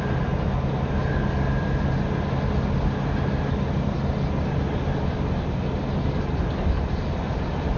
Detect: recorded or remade recorded